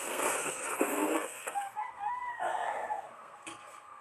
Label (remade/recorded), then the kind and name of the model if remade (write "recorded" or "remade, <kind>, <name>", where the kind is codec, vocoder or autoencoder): remade, codec, SNAC